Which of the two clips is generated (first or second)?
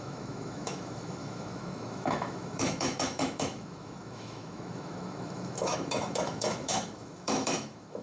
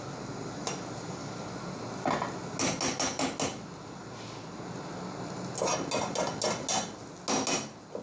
first